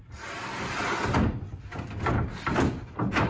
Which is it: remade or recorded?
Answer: remade